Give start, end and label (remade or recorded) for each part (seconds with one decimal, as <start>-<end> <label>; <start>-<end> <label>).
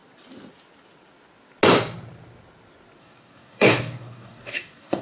0.0-3.0 recorded; 3.0-5.0 remade